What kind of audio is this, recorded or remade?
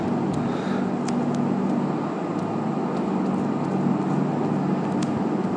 recorded